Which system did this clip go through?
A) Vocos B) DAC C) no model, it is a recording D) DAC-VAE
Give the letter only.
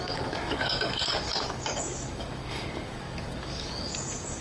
B